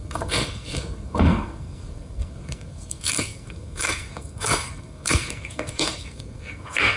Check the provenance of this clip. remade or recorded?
remade